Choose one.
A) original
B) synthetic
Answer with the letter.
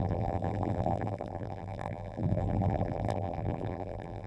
B